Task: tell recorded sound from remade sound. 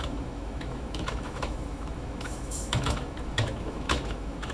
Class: remade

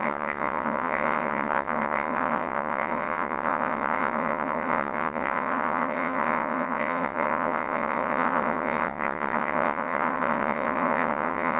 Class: remade